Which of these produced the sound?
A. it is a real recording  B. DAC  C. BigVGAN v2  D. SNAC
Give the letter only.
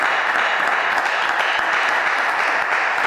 A